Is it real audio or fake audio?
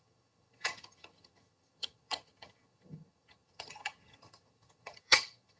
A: fake